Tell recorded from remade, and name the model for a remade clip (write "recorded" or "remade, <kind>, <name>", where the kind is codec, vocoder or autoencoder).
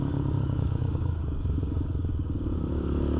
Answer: remade, codec, DAC